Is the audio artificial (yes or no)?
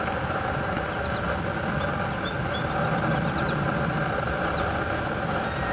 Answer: no